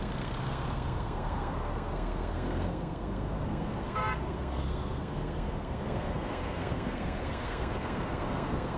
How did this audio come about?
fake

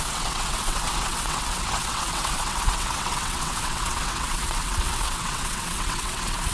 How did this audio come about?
fake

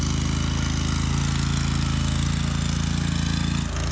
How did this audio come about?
real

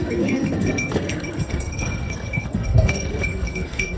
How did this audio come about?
fake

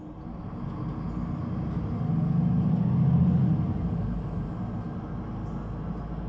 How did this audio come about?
real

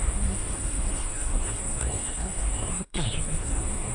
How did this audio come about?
fake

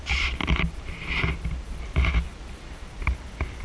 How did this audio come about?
real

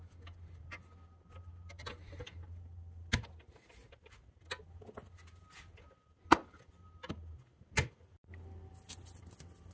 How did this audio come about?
real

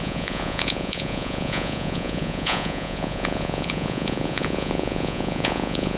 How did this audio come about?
fake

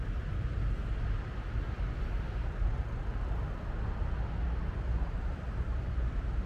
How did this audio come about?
real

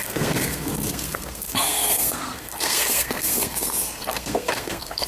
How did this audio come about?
fake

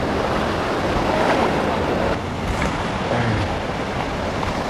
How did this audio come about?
real